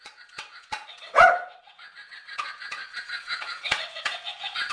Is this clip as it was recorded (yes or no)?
no